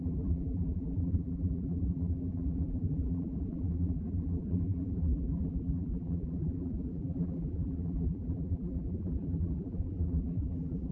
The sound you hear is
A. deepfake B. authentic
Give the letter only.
A